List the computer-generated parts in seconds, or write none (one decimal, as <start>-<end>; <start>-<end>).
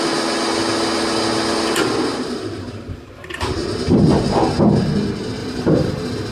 2.1-3.3; 5.4-6.3